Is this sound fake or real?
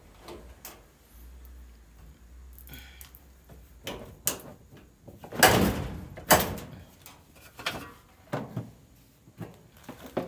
real